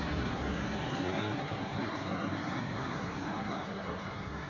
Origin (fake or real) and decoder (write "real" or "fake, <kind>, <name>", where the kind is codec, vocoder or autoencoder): fake, codec, SNAC